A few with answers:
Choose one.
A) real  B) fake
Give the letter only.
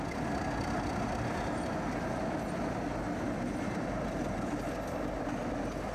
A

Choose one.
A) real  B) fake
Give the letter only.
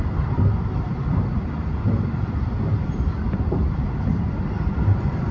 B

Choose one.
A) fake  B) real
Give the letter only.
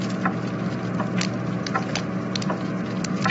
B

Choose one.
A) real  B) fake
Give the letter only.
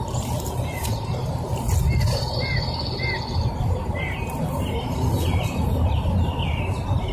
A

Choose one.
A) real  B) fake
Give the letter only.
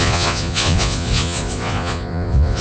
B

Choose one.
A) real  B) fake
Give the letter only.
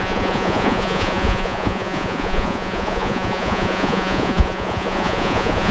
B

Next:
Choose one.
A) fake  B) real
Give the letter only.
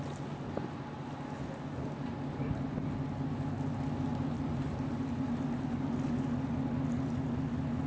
B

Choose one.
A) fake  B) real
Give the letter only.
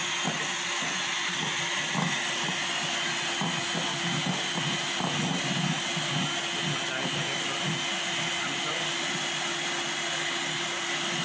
B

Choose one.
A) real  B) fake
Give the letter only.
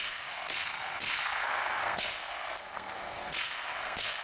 B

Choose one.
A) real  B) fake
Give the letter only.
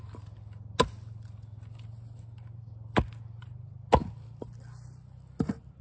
A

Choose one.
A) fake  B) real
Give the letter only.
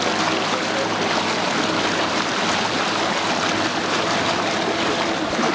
B